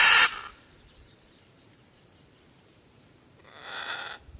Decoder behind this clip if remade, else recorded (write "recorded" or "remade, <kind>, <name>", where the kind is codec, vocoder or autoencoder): remade, vocoder, BigVGAN v2